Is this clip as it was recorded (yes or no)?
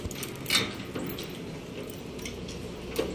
yes